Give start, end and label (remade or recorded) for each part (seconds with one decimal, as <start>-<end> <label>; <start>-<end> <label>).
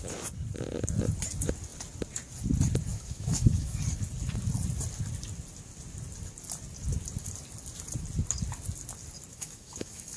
0.0-2.9 recorded; 2.9-3.8 remade; 3.8-9.3 recorded; 9.3-10.2 remade